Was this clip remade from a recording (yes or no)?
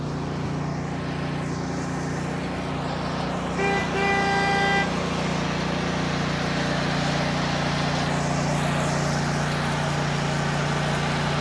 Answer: no